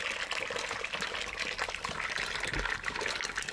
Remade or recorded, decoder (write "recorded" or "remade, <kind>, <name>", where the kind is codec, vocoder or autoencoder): recorded